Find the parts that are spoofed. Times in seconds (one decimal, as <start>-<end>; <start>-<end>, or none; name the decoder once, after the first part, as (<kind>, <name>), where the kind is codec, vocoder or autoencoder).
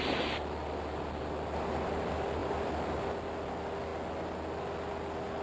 none